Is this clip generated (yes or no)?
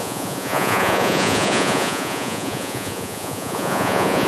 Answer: yes